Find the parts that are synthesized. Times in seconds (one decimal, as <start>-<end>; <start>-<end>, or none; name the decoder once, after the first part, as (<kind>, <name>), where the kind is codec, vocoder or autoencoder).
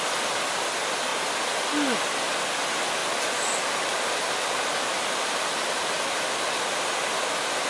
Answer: 3.0-6.6 (vocoder, BigVGAN v2)